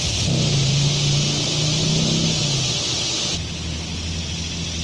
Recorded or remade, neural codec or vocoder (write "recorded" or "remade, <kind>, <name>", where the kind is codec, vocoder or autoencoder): recorded